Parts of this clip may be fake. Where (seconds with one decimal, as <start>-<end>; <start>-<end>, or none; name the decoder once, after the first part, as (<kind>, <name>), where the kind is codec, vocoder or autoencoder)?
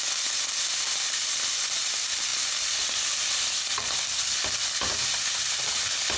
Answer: none